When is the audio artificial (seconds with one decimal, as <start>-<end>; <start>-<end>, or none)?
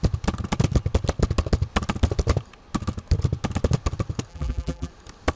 4.3-4.9